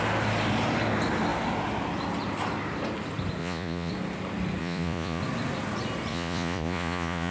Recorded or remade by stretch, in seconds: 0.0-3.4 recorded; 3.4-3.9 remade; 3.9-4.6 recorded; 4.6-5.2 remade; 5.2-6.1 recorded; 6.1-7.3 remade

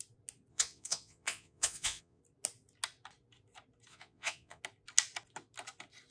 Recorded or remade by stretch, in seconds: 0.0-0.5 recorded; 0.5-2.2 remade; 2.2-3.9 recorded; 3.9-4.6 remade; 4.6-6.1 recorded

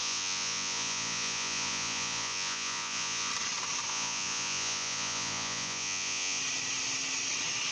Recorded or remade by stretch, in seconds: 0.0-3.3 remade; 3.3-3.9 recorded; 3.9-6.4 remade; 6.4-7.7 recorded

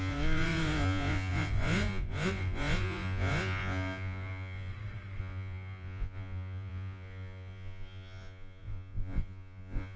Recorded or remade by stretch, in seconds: 0.0-4.7 remade; 4.7-5.2 recorded; 5.2-10.0 remade

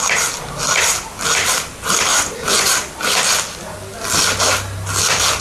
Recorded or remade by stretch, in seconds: 0.0-2.1 recorded; 2.1-2.7 remade; 2.7-5.4 recorded

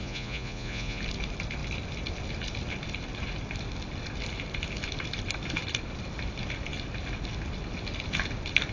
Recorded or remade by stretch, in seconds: 0.0-1.0 remade; 1.0-8.7 recorded

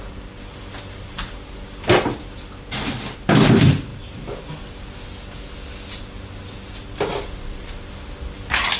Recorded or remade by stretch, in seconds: 0.0-8.8 recorded

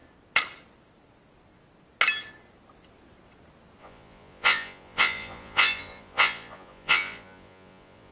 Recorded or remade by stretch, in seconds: 0.0-3.8 recorded; 3.8-8.1 remade